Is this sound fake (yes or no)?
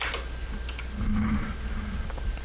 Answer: no